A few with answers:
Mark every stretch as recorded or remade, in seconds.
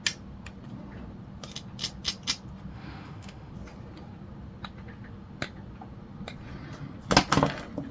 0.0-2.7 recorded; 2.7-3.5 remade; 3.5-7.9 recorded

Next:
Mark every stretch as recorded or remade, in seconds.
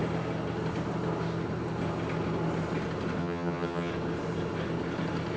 0.0-3.2 recorded; 3.2-3.9 remade; 3.9-5.4 recorded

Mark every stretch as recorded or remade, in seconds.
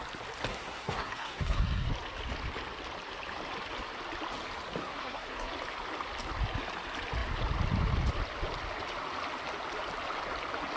0.0-0.5 recorded; 0.5-1.9 remade; 1.9-4.8 recorded; 4.8-5.5 remade; 5.5-10.8 recorded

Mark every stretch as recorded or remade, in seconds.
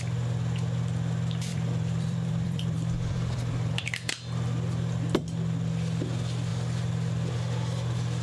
0.0-1.5 recorded; 1.5-4.1 remade; 4.1-8.2 recorded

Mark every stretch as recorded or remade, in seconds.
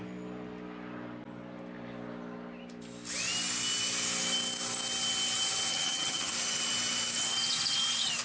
0.0-5.7 recorded; 5.7-6.3 remade; 6.3-8.2 recorded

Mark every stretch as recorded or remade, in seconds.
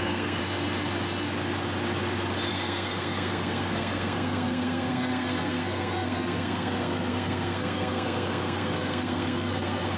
0.0-0.4 remade; 0.4-2.5 recorded; 2.5-10.0 remade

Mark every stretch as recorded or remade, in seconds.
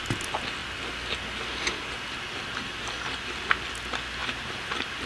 0.0-5.1 recorded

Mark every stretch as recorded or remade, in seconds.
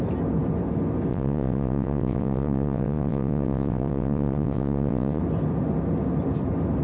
0.0-1.1 recorded; 1.1-5.2 remade; 5.2-6.8 recorded